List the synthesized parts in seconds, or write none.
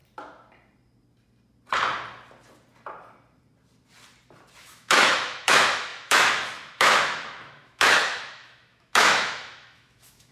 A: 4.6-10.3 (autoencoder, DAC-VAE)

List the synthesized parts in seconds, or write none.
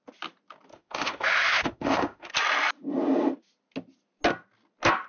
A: 0.7-2.3 (autoencoder, DAC-VAE)